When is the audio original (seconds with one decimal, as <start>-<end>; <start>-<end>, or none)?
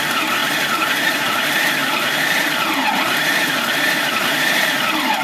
none